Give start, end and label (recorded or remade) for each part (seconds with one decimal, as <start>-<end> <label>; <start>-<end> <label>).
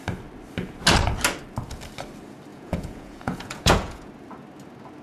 0.0-2.5 recorded; 2.5-4.1 remade; 4.1-5.0 recorded